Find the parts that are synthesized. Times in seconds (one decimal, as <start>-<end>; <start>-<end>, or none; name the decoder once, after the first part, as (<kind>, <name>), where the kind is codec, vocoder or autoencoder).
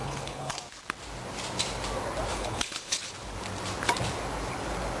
0.0-0.6 (codec, HILCodec); 2.3-3.0